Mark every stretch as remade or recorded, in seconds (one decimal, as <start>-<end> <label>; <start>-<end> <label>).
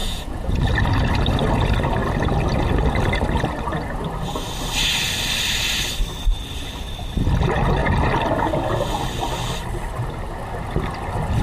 0.0-0.6 remade; 0.6-11.4 recorded